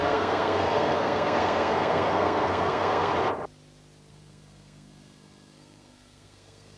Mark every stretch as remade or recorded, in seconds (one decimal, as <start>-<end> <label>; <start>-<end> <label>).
0.0-3.1 remade; 3.1-4.1 recorded; 4.1-6.8 remade